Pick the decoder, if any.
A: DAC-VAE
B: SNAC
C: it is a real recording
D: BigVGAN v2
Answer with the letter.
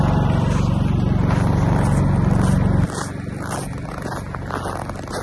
C